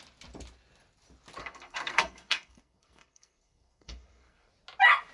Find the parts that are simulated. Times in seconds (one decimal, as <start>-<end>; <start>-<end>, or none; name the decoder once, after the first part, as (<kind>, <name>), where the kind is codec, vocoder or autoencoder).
1.4-4.5 (codec, SNAC)